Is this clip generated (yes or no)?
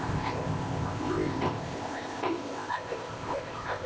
yes